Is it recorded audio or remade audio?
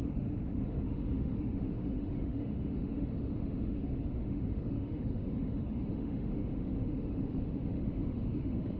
remade